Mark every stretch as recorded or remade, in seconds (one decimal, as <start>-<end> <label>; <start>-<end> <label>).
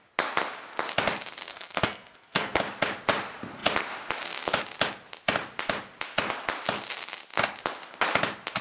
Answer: 0.0-1.5 recorded; 1.5-2.6 remade; 2.6-8.6 recorded